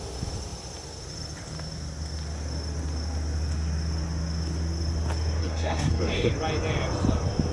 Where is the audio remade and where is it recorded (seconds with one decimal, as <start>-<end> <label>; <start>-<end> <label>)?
0.0-5.4 recorded; 5.4-6.3 remade; 6.3-7.5 recorded